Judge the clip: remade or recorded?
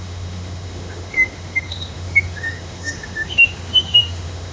remade